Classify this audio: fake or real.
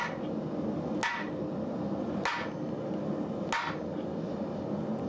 real